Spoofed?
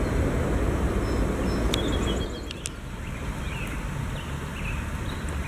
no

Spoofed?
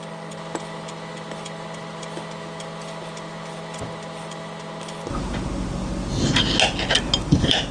no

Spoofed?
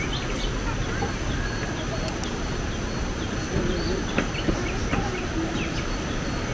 no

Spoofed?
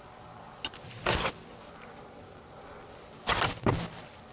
no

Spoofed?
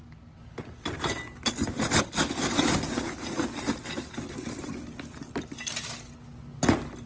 no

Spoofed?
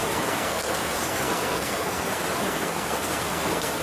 yes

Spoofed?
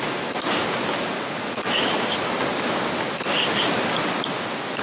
no